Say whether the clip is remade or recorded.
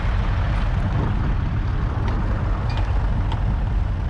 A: recorded